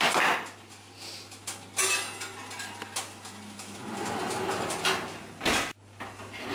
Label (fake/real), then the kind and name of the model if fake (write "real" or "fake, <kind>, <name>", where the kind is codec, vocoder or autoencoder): real